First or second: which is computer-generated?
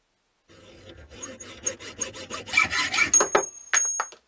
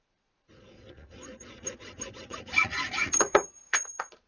second